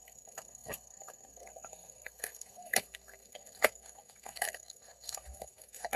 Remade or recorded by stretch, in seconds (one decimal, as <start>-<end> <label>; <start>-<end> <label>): 0.0-6.0 remade